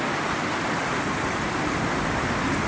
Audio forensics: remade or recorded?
recorded